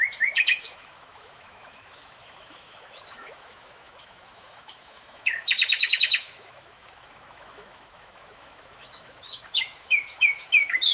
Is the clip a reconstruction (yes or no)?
yes